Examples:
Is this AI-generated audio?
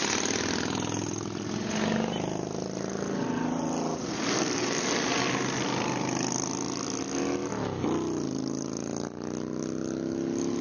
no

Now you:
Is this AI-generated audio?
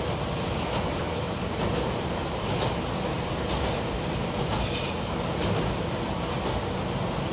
no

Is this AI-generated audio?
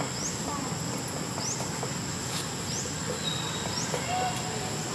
no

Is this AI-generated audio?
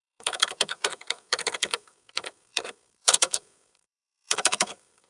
yes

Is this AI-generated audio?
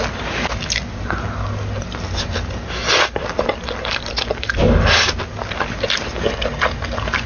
no